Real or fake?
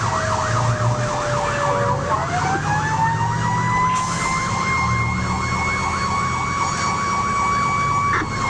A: real